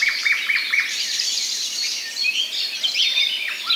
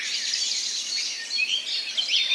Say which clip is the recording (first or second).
second